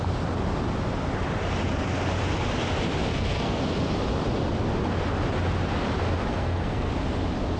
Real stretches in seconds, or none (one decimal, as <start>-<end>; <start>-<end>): 0.0-3.1; 3.6-6.3; 6.9-7.6